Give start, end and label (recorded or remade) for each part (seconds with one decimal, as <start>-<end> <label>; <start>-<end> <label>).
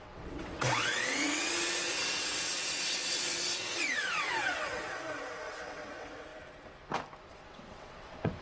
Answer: 0.0-4.8 remade; 4.8-5.5 recorded; 5.5-6.3 remade; 6.3-7.3 recorded; 7.3-8.4 remade